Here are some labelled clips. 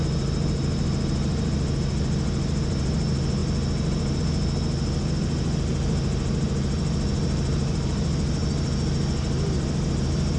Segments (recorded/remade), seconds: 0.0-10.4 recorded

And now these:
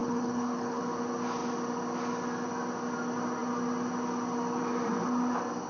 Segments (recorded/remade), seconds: 0.0-0.8 remade; 0.8-5.7 recorded

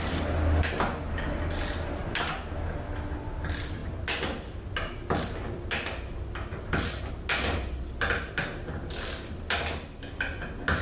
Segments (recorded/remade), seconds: 0.0-10.8 recorded

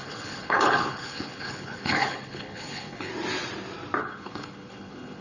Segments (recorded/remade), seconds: 0.0-3.1 remade; 3.1-4.0 recorded; 4.0-5.2 remade

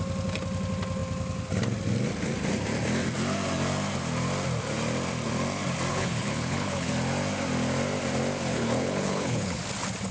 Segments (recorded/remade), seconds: 0.0-5.9 recorded; 5.9-6.9 remade; 6.9-8.5 recorded; 8.5-9.6 remade; 9.6-10.1 recorded